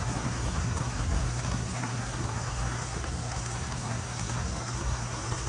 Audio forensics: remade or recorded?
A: remade